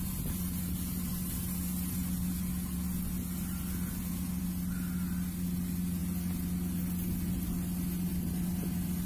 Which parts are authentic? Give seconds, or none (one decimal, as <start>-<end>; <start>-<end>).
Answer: 0.0-9.1